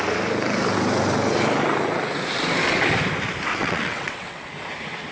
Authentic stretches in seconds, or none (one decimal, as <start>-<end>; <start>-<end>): 0.0-3.5; 4.5-5.1